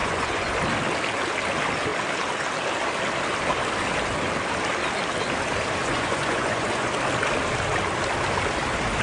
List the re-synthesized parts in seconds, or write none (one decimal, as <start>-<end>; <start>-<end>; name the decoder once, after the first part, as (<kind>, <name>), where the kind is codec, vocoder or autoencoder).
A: 0.0-0.5 (vocoder, Vocos); 5.8-6.9